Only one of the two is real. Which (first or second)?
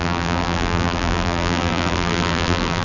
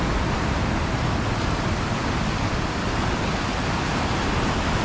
second